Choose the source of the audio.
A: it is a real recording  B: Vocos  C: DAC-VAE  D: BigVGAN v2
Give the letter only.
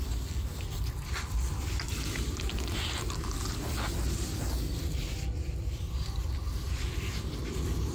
A